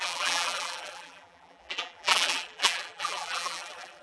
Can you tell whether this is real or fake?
fake